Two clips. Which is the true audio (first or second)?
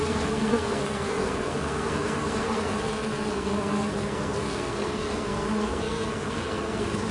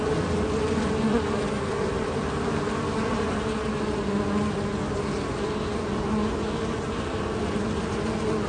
second